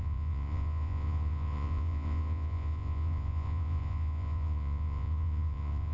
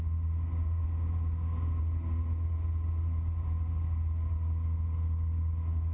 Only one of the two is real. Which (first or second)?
second